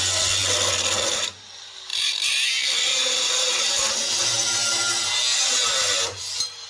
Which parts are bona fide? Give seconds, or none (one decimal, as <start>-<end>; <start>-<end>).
0.0-1.9; 4.8-6.7